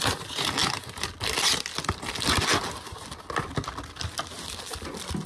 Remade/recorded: recorded